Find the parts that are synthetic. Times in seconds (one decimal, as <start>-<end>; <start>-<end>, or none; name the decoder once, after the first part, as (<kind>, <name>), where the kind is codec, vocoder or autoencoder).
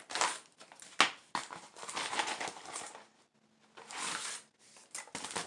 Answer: none